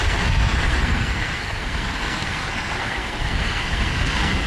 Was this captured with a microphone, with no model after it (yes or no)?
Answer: no